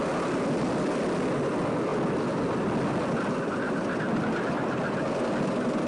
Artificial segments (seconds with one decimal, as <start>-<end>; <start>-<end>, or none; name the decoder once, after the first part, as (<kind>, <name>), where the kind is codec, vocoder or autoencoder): none